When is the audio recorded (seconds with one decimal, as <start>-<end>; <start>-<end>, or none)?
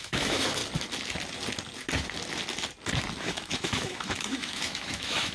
0.6-3.2